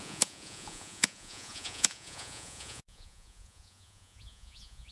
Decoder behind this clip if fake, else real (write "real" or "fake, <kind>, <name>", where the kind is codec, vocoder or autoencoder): fake, vocoder, Vocos